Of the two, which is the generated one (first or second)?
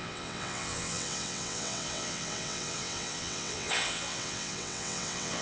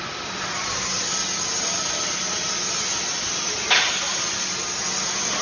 first